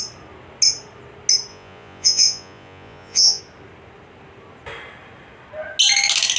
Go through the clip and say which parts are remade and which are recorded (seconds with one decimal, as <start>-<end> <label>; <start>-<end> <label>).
0.0-1.5 recorded; 1.5-3.4 remade; 3.4-6.4 recorded